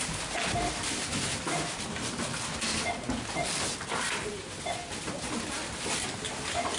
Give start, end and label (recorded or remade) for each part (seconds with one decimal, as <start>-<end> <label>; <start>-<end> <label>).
0.0-6.8 recorded